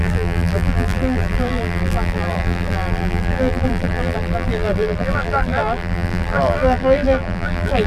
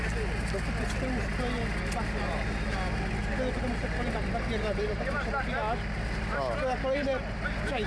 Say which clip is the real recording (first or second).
second